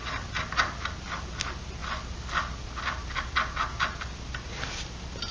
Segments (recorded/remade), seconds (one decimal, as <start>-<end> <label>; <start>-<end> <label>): 0.0-5.3 recorded